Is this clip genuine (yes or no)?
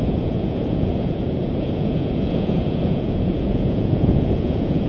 no